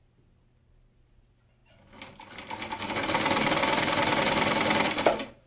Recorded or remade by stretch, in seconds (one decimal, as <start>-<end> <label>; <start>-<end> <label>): 0.0-5.5 recorded